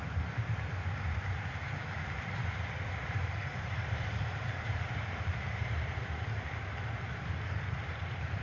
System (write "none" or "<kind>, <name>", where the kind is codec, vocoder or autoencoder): vocoder, BigVGAN v2